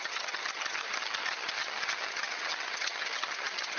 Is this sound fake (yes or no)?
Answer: yes